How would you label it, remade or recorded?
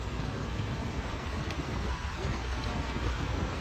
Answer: remade